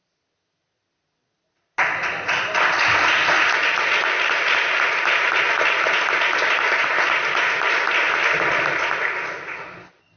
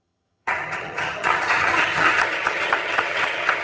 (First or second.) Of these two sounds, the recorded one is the first